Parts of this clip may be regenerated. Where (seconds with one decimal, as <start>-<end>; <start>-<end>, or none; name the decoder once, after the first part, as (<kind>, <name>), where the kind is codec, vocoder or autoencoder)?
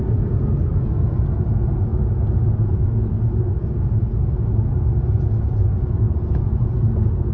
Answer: 0.0-7.3 (vocoder, Vocos)